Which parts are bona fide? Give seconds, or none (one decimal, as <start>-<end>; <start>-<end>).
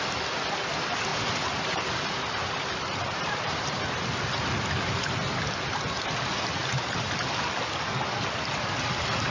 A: 0.0-1.1; 3.8-6.6; 7.1-9.3